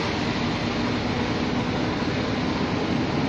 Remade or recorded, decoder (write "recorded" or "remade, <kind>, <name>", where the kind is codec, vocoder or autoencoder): recorded